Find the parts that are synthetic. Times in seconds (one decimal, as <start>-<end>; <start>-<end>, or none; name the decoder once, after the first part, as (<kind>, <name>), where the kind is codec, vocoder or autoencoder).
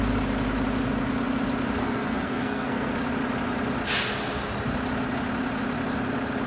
1.8-2.9 (codec, SNAC)